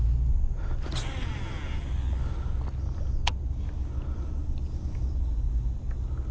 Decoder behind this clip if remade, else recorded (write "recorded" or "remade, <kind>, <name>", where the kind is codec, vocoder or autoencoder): recorded